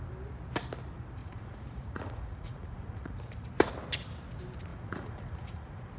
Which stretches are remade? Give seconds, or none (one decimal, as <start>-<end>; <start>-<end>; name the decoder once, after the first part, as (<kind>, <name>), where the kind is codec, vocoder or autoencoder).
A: 1.2-3.1 (vocoder, Vocos); 4.7-6.0